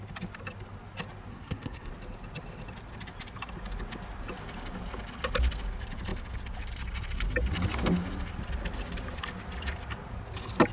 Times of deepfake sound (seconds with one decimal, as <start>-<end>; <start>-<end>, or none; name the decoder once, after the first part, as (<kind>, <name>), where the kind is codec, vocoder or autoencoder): 1.3-1.9 (codec, SNAC)